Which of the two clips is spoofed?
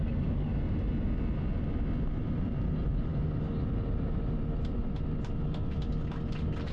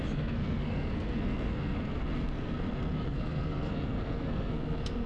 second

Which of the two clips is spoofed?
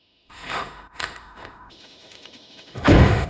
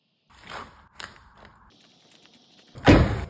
first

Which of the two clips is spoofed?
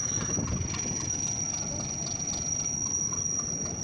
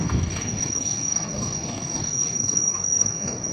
second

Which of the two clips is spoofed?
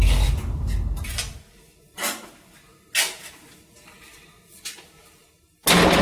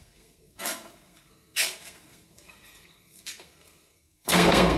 second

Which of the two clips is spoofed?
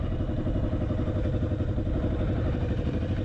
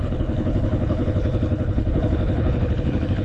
second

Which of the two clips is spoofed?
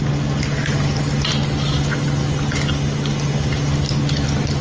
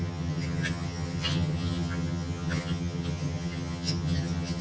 second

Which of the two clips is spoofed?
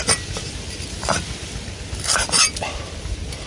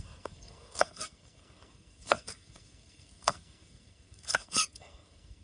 second